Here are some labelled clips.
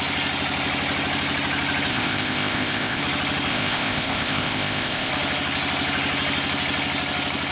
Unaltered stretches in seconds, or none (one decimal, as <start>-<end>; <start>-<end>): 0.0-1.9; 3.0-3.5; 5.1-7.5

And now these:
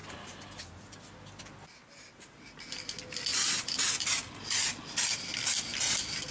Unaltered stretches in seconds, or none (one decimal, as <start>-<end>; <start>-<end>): 0.0-6.3

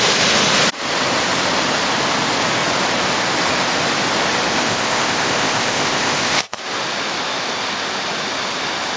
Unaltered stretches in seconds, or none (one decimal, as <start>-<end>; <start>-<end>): 0.0-4.5; 6.6-9.0

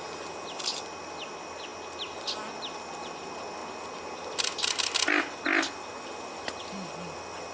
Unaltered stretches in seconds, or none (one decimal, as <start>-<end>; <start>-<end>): 0.0-7.5

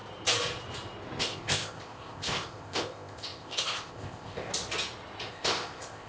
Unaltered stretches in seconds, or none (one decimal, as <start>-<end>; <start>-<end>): 0.0-1.2; 4.5-5.3